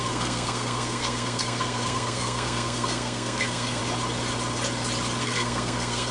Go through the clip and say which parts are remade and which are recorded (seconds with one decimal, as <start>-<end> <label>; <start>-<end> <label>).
0.0-3.8 remade; 3.8-5.2 recorded; 5.2-6.1 remade